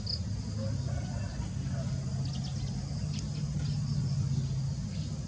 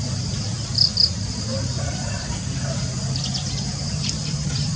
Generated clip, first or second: second